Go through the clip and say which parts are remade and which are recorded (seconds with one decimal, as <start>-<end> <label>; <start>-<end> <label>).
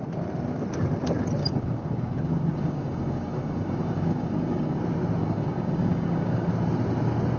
0.0-1.4 recorded; 1.4-4.8 remade; 4.8-5.2 recorded; 5.2-6.5 remade; 6.5-7.4 recorded